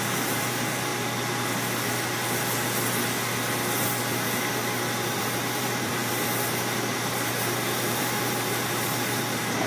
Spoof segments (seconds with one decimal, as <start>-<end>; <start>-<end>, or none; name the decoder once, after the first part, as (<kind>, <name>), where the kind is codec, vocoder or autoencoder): 0.0-0.9 (vocoder, BigVGAN v2); 5.2-6.0; 7.4-9.7